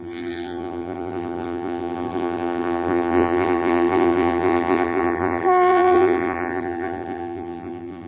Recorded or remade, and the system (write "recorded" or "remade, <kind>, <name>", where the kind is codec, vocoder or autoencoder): remade, vocoder, BigVGAN v2